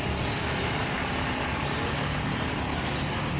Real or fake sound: real